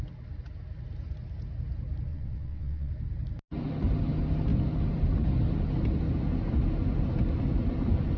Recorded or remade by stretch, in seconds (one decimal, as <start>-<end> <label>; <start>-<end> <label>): 0.0-2.1 recorded; 2.1-2.9 remade; 2.9-8.2 recorded